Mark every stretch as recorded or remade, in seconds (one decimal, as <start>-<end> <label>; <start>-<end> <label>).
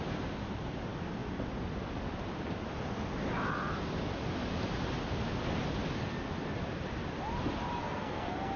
0.0-7.8 recorded; 7.8-8.6 remade